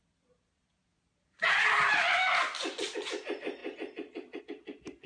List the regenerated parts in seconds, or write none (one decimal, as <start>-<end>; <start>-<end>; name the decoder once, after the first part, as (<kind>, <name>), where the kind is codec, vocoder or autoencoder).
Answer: 0.0-1.7 (vocoder, Vocos)